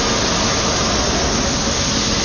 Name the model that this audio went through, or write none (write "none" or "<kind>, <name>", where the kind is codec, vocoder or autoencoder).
none